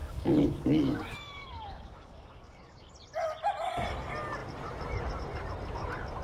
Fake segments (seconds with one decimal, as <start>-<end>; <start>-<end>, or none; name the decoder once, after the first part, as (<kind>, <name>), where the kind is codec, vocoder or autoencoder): 0.0-2.9 (codec, DAC)